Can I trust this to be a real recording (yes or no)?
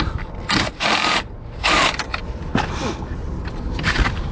yes